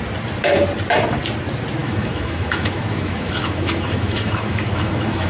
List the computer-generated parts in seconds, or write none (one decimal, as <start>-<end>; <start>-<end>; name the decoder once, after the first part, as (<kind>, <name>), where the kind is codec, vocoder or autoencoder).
1.8-5.3 (autoencoder, DAC-VAE)